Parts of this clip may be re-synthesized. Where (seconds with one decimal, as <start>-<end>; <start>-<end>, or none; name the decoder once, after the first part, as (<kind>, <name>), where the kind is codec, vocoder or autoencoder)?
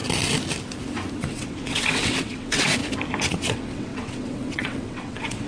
1.1-2.8 (vocoder, WaveNeXt); 3.3-5.5